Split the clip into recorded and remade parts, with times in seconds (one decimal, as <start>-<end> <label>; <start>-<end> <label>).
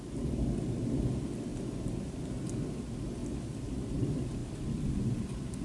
0.0-5.6 recorded